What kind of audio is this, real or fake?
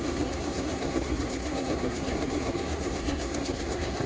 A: fake